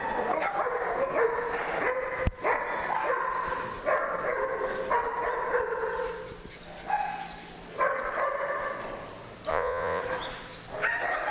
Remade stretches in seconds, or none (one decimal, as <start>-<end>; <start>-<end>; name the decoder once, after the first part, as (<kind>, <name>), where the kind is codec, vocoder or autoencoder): 9.5-10.0 (vocoder, Vocos)